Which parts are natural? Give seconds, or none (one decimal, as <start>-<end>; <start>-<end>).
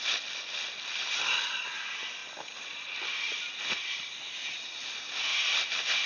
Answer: 0.0-5.3